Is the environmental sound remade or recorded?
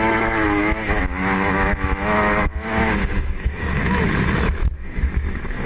remade